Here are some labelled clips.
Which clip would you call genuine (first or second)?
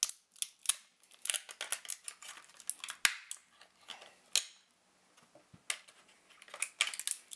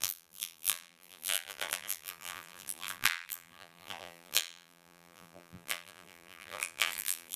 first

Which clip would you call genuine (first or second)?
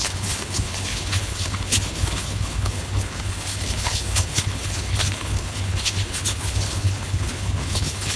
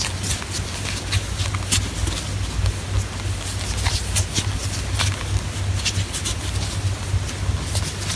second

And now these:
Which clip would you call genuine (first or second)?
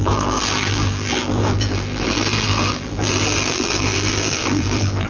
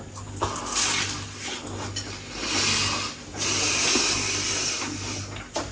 second